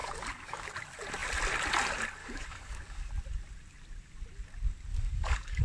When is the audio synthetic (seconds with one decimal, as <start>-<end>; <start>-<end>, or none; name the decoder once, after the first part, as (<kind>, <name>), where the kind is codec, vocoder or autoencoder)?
0.0-0.7 (codec, DAC); 2.2-3.1; 4.9-5.6